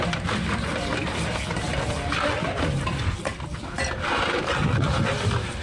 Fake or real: real